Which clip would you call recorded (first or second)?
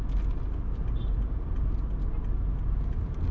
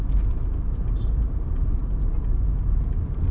first